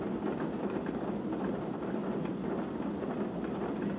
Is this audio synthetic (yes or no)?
no